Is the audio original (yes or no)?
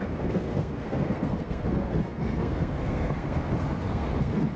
no